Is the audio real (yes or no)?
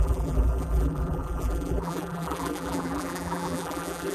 no